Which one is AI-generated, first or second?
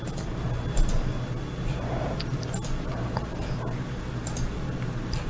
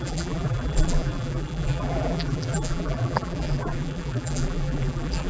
second